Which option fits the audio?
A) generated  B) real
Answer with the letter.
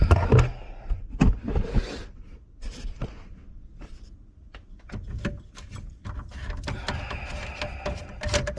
B